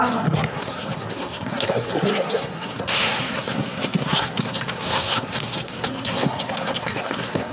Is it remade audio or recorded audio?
remade